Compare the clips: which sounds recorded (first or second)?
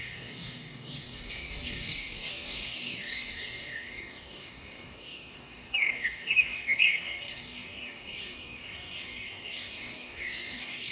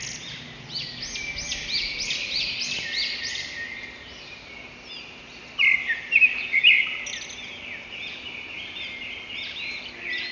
second